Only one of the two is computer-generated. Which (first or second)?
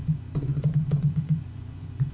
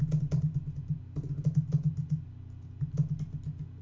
first